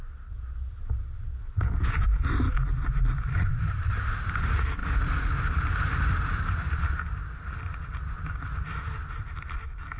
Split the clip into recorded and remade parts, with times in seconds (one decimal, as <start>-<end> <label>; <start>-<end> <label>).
0.0-2.1 recorded; 2.1-2.9 remade; 2.9-3.5 recorded; 3.5-4.2 remade; 4.2-10.0 recorded